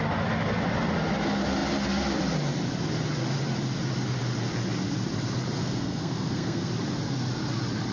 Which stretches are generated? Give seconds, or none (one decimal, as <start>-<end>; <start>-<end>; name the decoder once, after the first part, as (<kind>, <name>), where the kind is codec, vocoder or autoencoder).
5.6-6.7 (codec, SNAC)